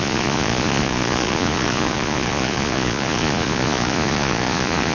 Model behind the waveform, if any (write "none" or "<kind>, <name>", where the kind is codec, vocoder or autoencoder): vocoder, Vocos